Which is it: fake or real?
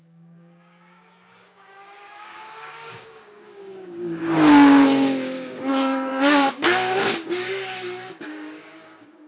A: fake